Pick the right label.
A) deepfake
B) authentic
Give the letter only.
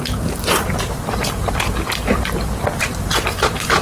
A